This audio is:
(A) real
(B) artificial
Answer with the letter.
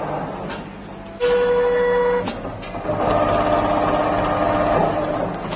A